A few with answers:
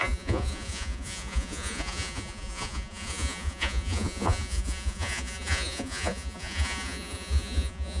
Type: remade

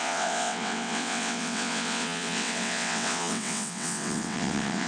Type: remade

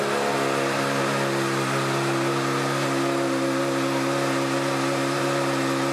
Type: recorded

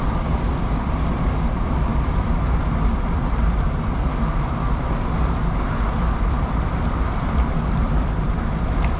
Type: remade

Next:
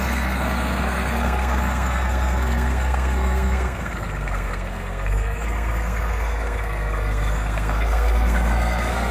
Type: remade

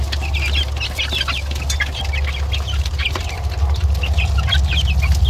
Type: recorded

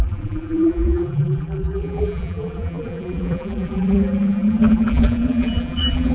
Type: remade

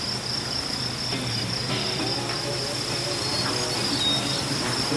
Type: recorded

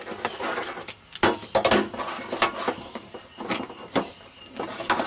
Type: recorded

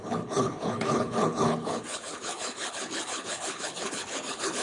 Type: remade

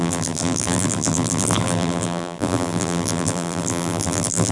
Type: remade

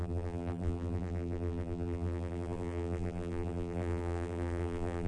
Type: remade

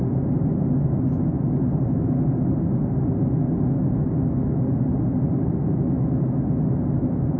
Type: recorded